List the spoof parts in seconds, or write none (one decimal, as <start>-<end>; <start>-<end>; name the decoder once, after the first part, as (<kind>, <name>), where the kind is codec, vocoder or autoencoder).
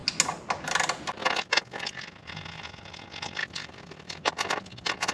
3.4-4.6 (vocoder, BigVGAN v2)